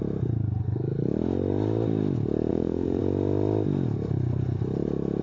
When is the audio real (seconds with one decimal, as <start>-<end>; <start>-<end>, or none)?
0.0-2.5; 3.0-5.2